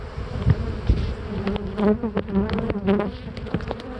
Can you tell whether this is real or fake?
real